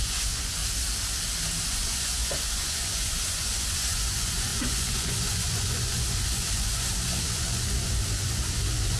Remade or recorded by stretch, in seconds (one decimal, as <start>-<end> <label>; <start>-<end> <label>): 0.0-0.6 remade; 0.6-1.7 recorded; 1.7-9.0 remade